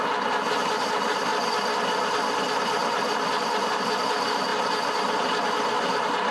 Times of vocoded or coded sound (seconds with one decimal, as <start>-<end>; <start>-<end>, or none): none